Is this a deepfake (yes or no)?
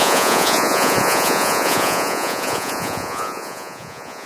yes